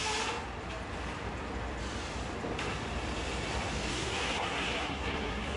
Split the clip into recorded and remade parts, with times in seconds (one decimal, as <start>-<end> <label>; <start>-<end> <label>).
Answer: 0.0-3.9 recorded; 3.9-5.6 remade